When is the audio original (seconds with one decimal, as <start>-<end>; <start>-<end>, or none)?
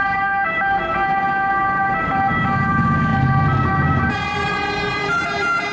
3.1-4.1